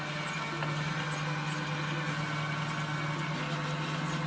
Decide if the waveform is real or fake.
real